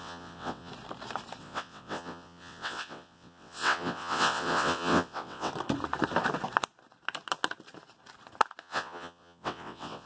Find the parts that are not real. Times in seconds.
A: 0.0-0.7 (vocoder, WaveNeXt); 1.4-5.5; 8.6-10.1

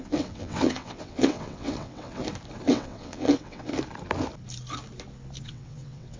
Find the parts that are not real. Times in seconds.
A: 0.0-2.2 (vocoder, WaveNeXt); 2.7-3.7; 5.4-6.2

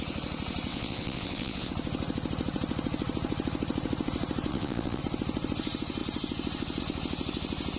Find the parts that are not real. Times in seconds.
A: 0.7-1.7 (vocoder, WaveNeXt); 4.5-5.0